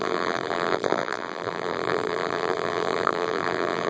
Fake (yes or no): yes